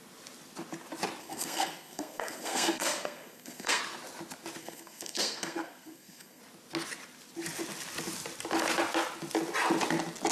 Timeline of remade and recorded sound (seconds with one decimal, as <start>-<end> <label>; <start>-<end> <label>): 0.0-1.2 recorded; 1.2-3.8 remade; 3.8-4.6 recorded; 4.6-6.4 remade; 6.4-10.3 recorded